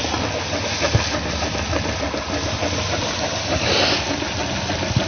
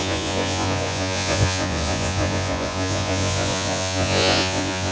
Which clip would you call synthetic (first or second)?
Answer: second